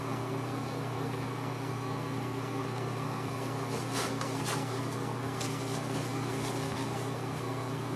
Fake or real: fake